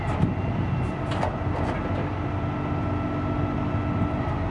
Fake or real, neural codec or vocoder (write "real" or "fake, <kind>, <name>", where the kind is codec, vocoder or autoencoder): real